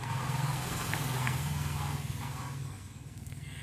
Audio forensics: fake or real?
fake